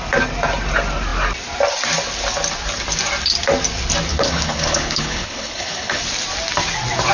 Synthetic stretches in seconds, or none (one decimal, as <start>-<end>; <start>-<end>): 4.1-6.0